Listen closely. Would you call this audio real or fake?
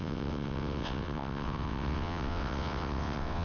fake